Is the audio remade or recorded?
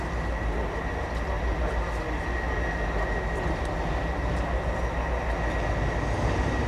recorded